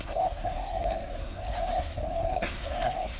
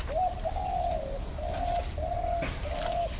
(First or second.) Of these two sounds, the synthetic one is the first